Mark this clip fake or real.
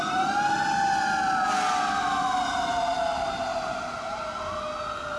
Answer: real